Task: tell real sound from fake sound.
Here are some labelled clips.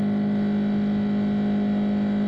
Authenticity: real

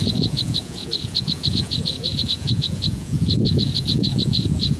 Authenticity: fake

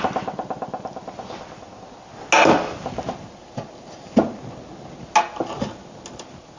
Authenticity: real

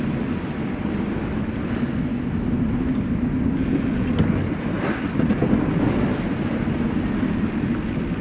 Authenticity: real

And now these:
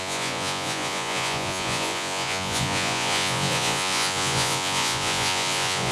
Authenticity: fake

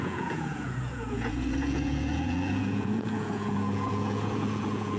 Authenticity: fake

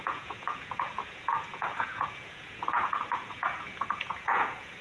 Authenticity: fake